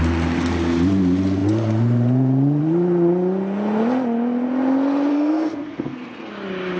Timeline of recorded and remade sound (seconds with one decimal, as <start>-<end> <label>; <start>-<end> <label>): 0.0-5.1 recorded; 5.1-6.3 remade; 6.3-6.8 recorded